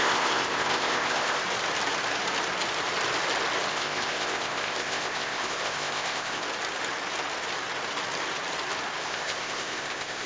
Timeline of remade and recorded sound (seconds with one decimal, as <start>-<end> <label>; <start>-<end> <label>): 0.0-1.4 remade; 1.4-3.7 recorded; 3.7-6.4 remade; 6.4-9.0 recorded; 9.0-10.3 remade